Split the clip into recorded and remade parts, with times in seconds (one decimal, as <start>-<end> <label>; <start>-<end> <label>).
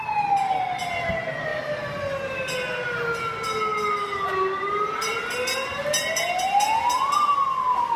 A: 0.0-8.0 recorded